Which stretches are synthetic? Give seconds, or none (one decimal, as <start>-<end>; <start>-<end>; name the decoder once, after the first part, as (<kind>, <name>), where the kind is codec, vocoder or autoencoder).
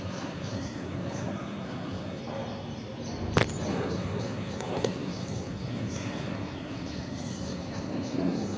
0.0-2.2 (codec, SNAC); 3.7-8.6